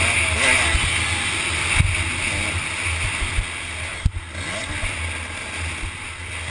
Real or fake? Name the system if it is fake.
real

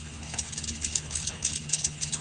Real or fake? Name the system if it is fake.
fake, codec, HILCodec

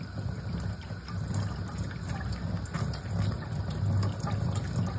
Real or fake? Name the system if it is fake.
real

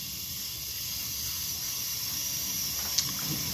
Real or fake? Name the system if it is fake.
real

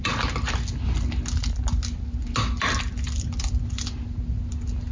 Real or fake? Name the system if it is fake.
real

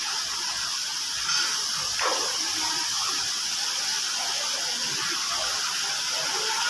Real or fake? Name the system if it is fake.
real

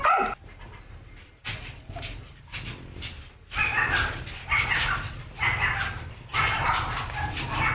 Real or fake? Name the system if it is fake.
real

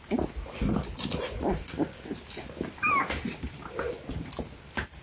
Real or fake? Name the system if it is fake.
real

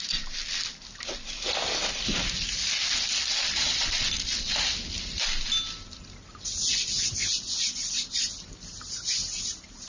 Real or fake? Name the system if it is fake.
real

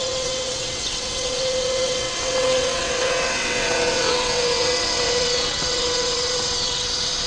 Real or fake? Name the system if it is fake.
fake, vocoder, WaveNeXt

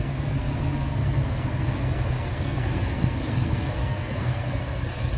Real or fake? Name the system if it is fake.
fake, codec, SNAC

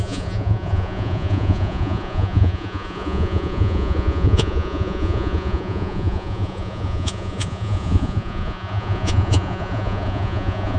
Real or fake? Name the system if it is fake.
fake, vocoder, Vocos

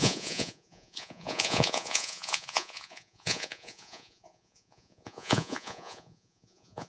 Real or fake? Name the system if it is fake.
fake, vocoder, Vocos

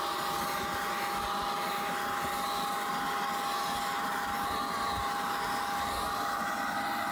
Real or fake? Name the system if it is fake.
real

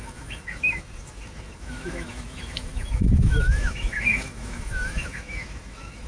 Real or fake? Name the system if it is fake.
fake, autoencoder, DAC-VAE